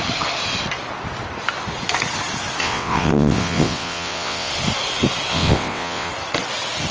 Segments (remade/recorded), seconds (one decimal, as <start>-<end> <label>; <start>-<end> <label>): 0.0-2.6 recorded; 2.6-4.5 remade; 4.5-5.3 recorded; 5.3-6.1 remade; 6.1-6.9 recorded